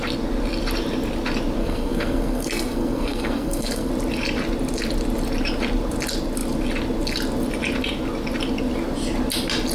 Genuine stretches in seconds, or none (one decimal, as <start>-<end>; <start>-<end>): 0.0-1.6; 3.9-9.7